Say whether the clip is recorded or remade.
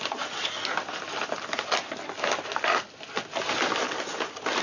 recorded